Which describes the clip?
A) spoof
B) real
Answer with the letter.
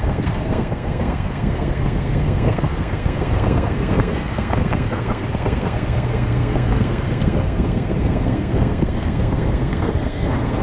A